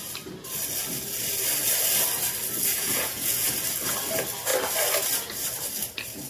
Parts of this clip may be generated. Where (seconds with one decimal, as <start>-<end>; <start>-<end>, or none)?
2.7-3.5